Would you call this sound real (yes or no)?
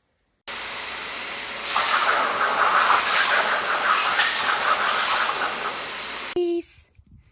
yes